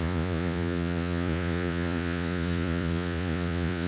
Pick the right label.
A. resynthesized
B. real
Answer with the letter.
A